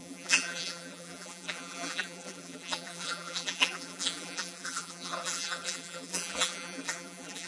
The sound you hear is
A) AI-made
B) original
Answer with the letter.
A